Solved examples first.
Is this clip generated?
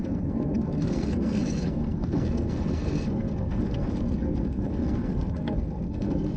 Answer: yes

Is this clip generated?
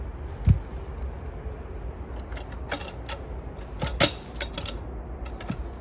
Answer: no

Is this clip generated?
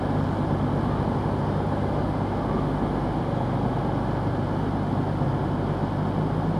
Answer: no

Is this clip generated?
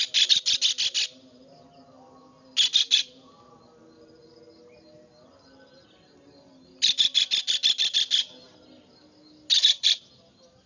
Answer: no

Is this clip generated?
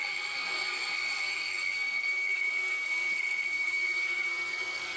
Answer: yes